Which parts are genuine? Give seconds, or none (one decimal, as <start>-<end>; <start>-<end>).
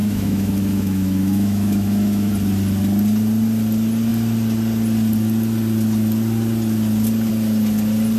2.3-8.2